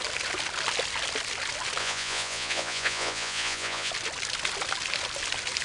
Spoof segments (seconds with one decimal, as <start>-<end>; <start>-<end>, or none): 1.8-3.9